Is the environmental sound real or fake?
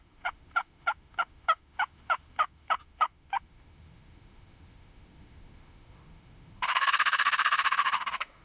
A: fake